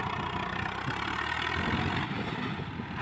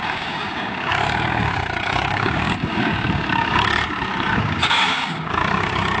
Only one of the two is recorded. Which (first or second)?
first